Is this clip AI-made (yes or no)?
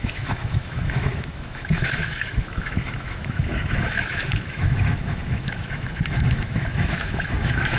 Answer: yes